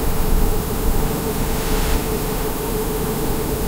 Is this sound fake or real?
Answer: fake